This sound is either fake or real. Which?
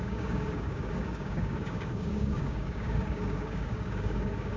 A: fake